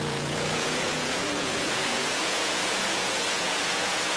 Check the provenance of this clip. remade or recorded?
remade